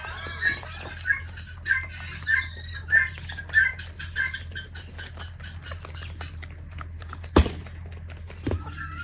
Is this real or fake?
real